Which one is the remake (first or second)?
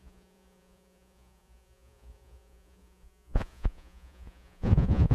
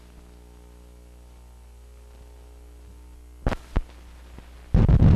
first